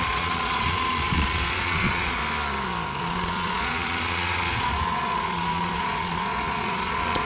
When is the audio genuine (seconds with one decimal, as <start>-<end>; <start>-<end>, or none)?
2.2-3.0